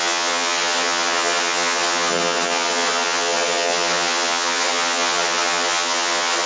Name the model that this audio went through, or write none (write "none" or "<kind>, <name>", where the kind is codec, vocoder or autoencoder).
vocoder, HiFi-GAN